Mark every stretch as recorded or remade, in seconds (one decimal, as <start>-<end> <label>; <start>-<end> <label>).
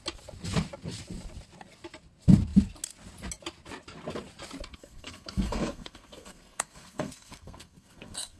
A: 0.0-4.7 recorded; 4.7-8.4 remade